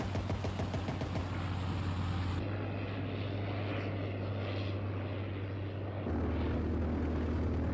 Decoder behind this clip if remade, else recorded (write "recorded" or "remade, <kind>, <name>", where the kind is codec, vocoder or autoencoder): recorded